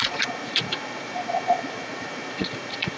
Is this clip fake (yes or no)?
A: yes